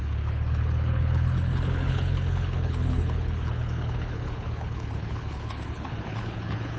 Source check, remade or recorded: remade